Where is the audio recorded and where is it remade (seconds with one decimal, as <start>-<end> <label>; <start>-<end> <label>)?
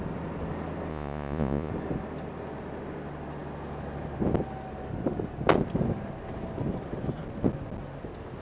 0.0-0.9 recorded; 0.9-1.7 remade; 1.7-8.4 recorded